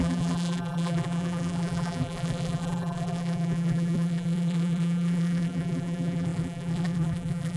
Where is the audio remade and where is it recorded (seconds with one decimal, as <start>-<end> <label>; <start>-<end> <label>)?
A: 0.0-7.6 remade